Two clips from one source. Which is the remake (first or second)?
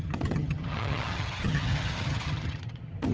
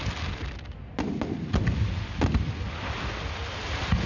first